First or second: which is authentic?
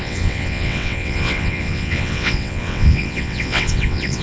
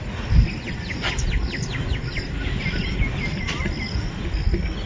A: second